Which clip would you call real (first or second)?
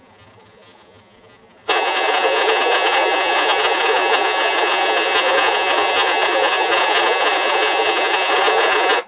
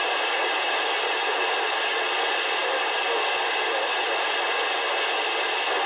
second